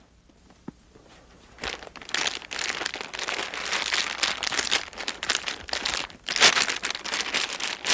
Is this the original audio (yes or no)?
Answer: yes